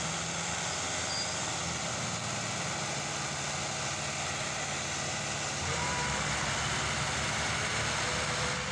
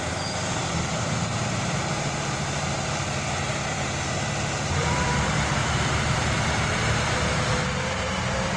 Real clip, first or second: first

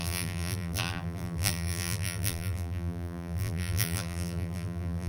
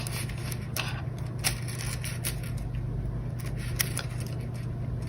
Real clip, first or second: second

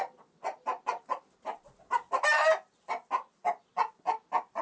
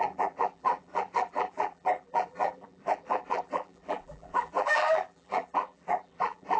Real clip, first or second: first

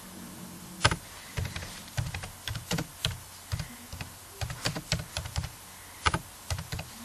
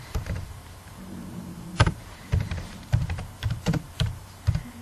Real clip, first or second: first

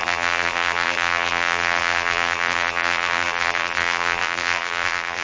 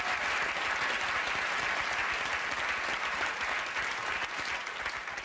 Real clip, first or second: second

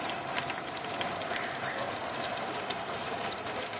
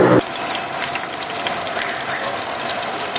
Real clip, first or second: second